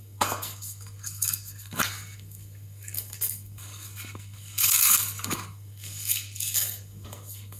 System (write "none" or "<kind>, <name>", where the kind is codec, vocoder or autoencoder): codec, SNAC